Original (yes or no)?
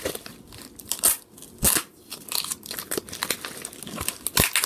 yes